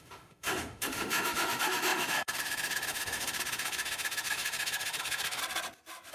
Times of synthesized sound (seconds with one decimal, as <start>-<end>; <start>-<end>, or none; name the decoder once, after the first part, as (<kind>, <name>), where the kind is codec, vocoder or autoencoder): 0.0-5.4 (autoencoder, DAC-VAE)